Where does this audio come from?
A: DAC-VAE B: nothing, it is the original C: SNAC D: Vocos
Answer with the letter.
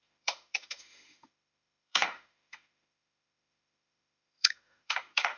A